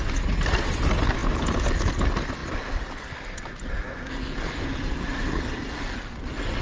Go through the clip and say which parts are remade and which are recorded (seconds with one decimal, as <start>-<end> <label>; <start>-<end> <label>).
0.0-6.6 recorded